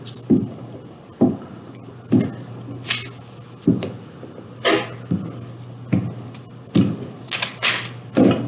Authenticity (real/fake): real